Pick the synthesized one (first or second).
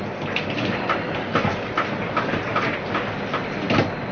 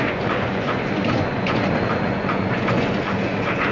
second